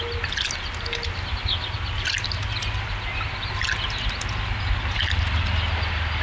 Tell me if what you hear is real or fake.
real